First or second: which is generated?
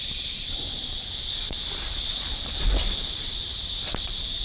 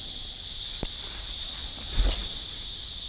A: first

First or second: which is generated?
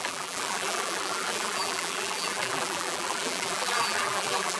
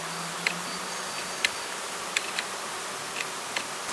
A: first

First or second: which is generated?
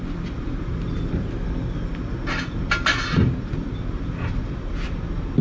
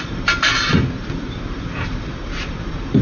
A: second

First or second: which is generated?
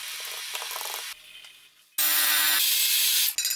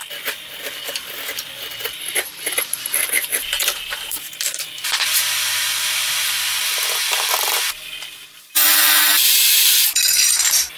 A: second